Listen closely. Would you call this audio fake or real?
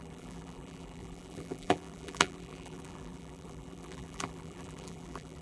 fake